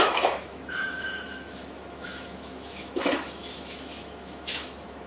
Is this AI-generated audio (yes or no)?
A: yes